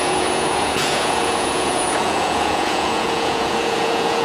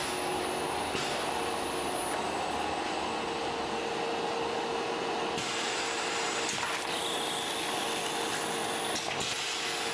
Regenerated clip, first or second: first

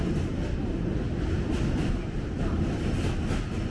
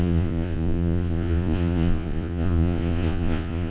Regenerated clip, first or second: second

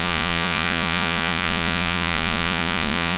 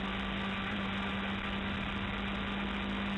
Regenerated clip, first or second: first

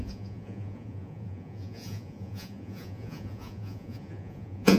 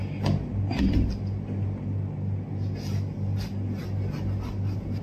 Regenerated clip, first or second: first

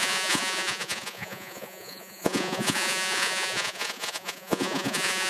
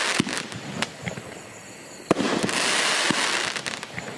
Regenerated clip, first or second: first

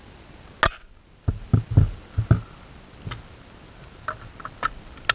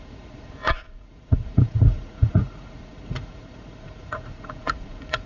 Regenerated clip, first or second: second